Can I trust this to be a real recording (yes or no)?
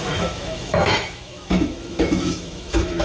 no